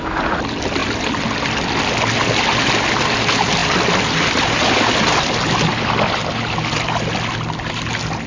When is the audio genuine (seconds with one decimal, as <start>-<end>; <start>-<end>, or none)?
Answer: 0.0-8.3